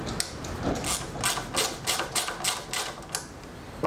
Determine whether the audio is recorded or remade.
recorded